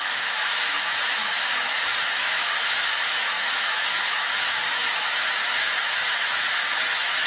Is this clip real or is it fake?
fake